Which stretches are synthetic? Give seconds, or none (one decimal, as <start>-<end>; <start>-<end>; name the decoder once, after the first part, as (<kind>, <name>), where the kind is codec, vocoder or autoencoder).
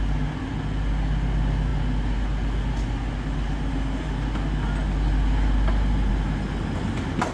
none